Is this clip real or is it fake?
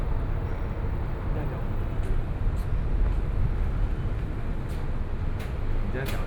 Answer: real